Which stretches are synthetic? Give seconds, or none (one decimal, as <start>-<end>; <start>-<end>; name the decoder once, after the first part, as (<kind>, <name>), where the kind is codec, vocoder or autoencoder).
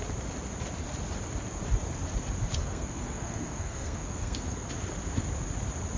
2.5-4.7 (codec, SNAC)